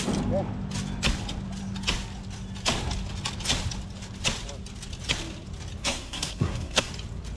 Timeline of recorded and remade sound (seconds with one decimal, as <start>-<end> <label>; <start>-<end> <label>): 0.0-5.8 recorded; 5.8-6.9 remade; 6.9-7.4 recorded